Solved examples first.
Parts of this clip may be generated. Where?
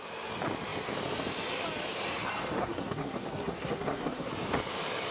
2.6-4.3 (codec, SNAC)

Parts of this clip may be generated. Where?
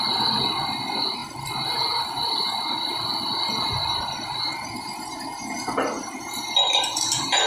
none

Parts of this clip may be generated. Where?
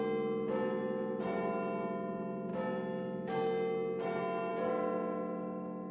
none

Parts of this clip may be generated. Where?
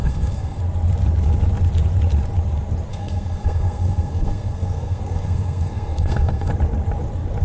0.0-0.6 (codec, SNAC); 2.9-6.5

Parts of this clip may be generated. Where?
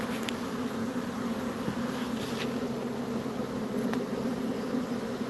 none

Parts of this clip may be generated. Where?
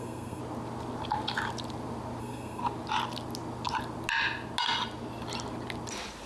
0.0-0.4 (codec, SNAC); 2.2-2.6